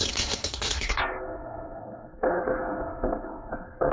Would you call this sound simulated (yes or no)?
yes